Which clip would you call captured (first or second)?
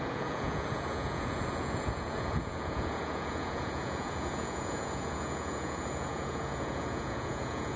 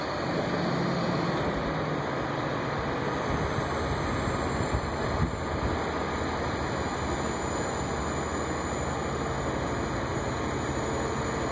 second